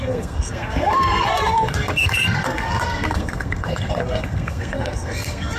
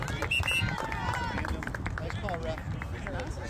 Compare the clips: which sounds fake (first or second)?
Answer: first